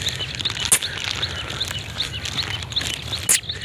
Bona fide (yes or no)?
yes